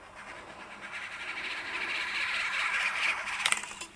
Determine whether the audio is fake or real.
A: real